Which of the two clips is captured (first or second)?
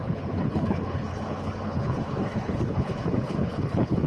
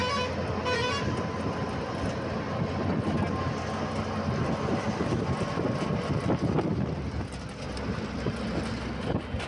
second